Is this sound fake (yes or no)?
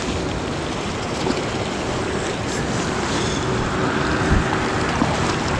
no